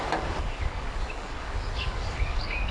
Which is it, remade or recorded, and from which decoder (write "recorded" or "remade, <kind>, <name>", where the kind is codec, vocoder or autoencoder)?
remade, codec, DAC